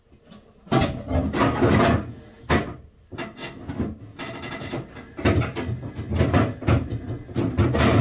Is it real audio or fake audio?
real